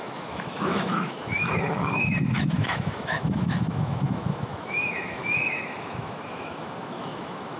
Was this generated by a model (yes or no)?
yes